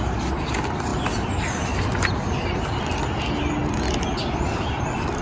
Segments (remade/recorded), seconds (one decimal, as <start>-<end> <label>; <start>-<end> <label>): 0.0-5.2 recorded